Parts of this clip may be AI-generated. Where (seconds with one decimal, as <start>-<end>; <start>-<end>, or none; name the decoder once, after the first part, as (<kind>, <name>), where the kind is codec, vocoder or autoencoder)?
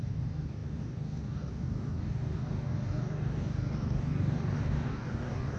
0.0-5.6 (codec, DAC)